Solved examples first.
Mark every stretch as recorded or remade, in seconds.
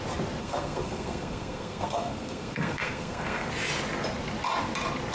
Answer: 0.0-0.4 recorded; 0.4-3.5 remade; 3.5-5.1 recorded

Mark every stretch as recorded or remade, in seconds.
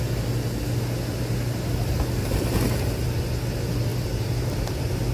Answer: 0.0-2.2 recorded; 2.2-2.9 remade; 2.9-3.9 recorded; 3.9-5.1 remade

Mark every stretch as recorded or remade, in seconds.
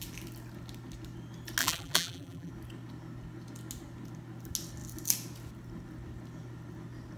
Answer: 0.0-1.6 recorded; 1.6-2.5 remade; 2.5-7.2 recorded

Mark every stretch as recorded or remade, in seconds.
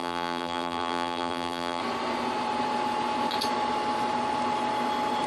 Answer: 0.0-1.8 remade; 1.8-5.3 recorded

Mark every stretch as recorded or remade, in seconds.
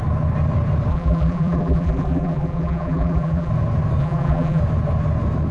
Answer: 0.0-0.9 recorded; 0.9-3.5 remade; 3.5-4.0 recorded; 4.0-4.6 remade; 4.6-5.5 recorded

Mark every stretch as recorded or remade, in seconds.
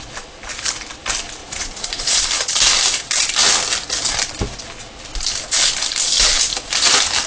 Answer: 0.0-1.4 recorded; 1.4-2.2 remade; 2.2-7.3 recorded